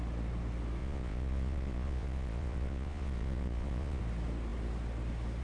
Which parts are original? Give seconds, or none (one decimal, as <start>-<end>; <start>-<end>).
0.0-0.8; 4.0-5.4